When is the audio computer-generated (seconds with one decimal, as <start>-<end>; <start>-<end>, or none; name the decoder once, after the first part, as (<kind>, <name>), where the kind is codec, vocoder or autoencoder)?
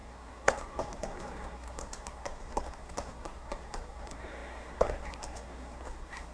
0.0-6.3 (codec, SNAC)